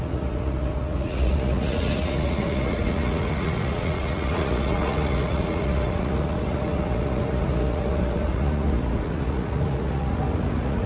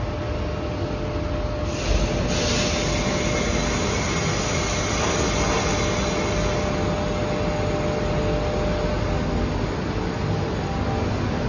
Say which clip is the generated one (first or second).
first